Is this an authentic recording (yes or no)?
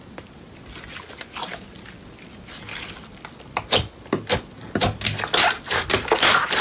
yes